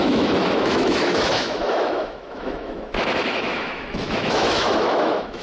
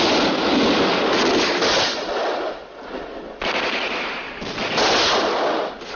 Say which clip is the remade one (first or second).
first